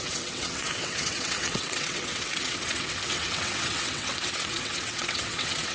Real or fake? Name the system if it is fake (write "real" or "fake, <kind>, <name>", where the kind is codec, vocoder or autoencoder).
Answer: fake, vocoder, WaveNeXt